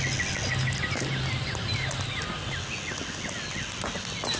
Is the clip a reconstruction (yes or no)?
no